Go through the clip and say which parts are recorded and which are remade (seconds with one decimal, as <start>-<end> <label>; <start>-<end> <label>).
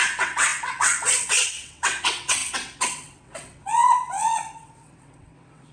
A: 0.0-5.7 remade